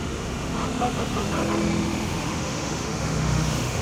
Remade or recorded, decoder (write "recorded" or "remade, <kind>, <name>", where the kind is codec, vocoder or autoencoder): remade, autoencoder, DAC-VAE